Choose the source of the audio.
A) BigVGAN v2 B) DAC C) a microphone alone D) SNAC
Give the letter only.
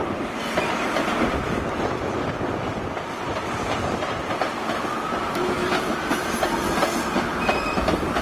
C